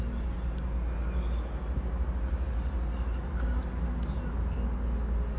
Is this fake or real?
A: real